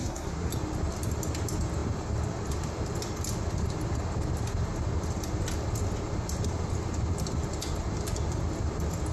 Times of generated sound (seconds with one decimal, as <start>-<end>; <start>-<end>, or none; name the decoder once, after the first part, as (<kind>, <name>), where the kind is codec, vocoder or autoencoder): 0.0-0.5 (codec, SNAC)